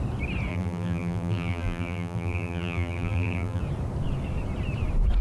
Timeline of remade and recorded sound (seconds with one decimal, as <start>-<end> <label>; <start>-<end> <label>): 0.0-0.5 recorded; 0.5-3.6 remade; 3.6-5.2 recorded